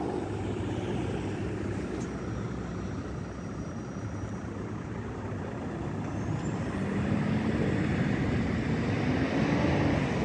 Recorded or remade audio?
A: recorded